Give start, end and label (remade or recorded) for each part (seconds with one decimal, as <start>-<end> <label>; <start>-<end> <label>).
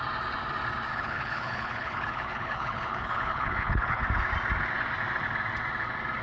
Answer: 0.0-0.9 recorded; 0.9-4.0 remade; 4.0-6.2 recorded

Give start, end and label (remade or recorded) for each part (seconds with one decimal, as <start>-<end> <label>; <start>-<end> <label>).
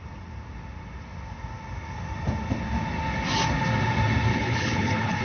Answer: 0.0-4.3 recorded; 4.3-5.2 remade